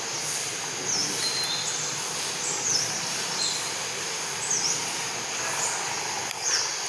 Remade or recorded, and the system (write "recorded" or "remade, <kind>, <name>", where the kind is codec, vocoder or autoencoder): recorded